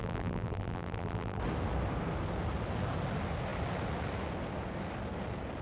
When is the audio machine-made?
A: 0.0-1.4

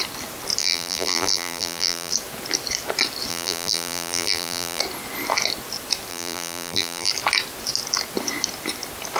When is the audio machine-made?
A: 0.6-2.1; 3.3-4.8; 6.1-7.1